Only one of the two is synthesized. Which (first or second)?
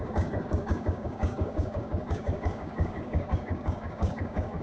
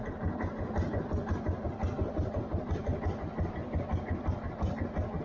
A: first